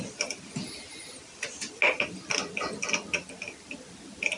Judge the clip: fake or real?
real